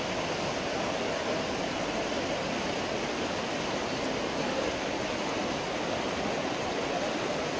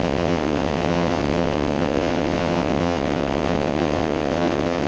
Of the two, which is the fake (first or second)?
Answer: second